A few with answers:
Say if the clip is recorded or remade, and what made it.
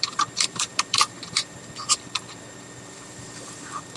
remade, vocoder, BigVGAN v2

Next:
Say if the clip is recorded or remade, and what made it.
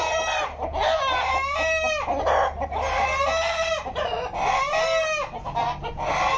recorded